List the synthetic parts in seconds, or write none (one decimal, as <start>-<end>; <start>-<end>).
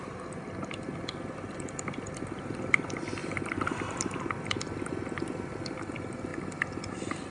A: none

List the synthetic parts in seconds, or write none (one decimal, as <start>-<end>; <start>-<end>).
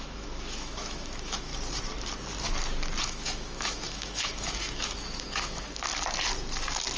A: 0.0-1.5; 3.0-5.9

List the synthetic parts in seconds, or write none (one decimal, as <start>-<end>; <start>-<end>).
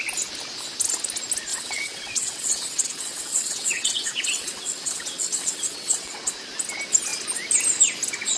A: 1.5-6.3